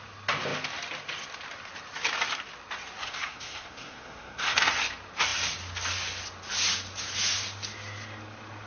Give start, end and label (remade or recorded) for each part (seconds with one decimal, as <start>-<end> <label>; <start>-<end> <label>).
0.0-3.0 recorded; 3.0-4.6 remade; 4.6-8.7 recorded